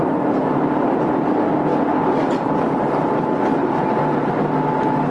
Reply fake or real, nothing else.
real